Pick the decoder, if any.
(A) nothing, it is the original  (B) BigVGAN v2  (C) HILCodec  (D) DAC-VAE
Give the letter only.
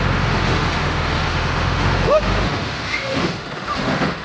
D